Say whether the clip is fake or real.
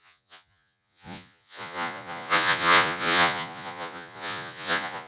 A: fake